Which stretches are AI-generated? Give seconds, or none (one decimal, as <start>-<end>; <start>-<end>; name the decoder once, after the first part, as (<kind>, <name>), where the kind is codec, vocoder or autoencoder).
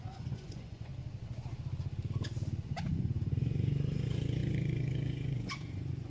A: 0.0-0.9 (vocoder, Vocos); 2.9-6.1